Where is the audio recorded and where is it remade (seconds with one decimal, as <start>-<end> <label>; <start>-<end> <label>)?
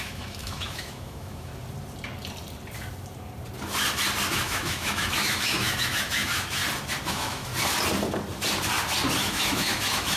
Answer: 0.0-1.5 remade; 1.5-4.3 recorded; 4.3-6.6 remade; 6.6-7.1 recorded; 7.1-7.5 remade; 7.5-9.2 recorded; 9.2-10.2 remade